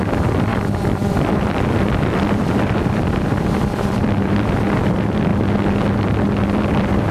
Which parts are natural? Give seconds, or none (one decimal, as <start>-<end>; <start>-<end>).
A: 5.3-6.6